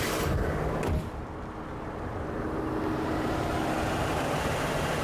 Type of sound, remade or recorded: recorded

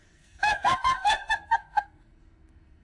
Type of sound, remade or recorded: remade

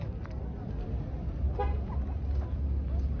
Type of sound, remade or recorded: recorded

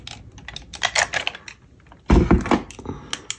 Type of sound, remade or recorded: recorded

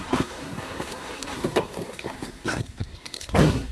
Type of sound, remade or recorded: remade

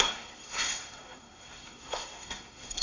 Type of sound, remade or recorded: remade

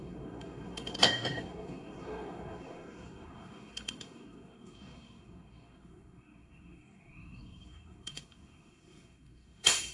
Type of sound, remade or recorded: remade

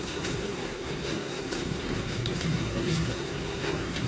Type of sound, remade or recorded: remade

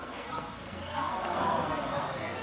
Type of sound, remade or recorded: remade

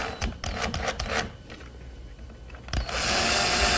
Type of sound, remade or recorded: recorded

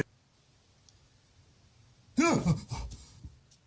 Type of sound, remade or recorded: recorded